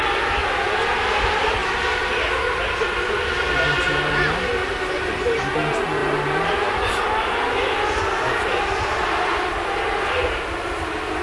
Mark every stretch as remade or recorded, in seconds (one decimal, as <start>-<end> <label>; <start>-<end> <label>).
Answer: 0.0-11.2 recorded